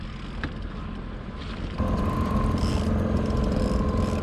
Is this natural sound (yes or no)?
no